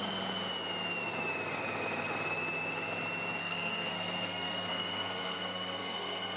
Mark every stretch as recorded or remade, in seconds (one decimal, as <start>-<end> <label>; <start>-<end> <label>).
0.0-3.4 recorded; 3.4-6.4 remade